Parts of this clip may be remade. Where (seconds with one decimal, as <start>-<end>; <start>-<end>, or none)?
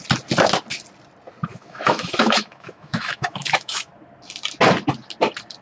1.5-3.9